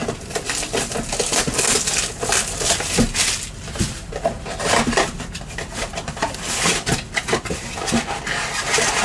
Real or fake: real